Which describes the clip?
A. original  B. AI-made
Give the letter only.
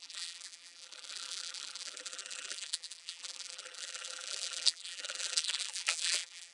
B